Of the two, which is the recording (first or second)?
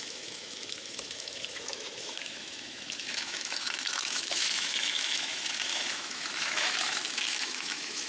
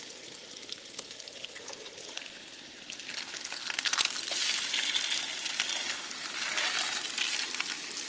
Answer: second